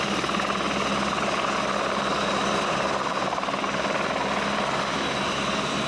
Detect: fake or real real